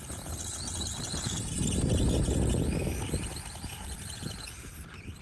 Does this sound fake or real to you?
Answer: real